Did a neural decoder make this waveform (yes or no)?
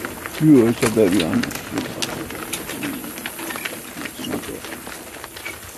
no